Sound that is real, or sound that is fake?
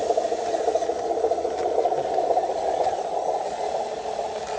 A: real